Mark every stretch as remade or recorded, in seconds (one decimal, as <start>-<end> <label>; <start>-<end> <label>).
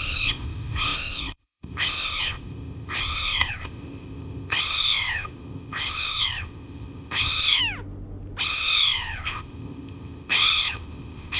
0.0-7.6 remade; 7.6-8.4 recorded; 8.4-11.4 remade